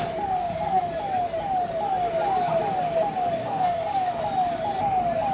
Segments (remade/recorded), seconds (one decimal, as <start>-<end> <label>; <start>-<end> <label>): 0.0-0.4 recorded; 0.4-1.0 remade; 1.0-3.4 recorded; 3.4-4.2 remade; 4.2-5.3 recorded